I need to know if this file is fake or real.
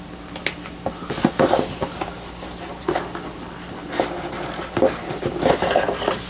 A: real